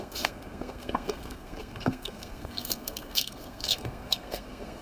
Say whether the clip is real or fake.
fake